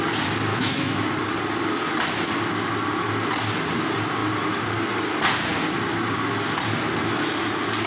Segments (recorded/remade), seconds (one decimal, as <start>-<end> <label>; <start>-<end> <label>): 0.0-0.5 recorded; 0.5-1.1 remade; 1.1-7.9 recorded